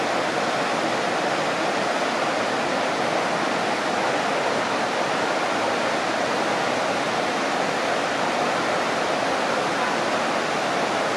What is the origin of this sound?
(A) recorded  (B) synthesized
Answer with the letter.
A